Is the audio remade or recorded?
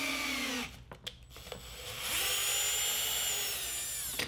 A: recorded